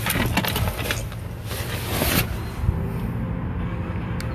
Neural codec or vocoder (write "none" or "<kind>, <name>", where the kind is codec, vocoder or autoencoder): none